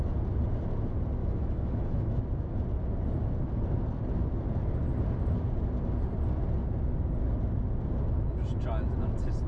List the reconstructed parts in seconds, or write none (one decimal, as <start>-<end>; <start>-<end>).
1.2-2.2